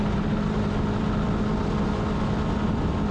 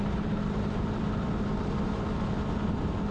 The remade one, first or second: second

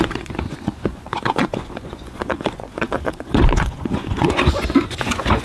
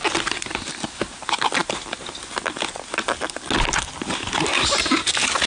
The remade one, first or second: first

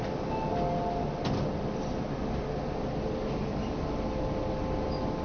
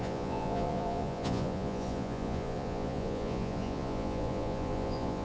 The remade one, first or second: second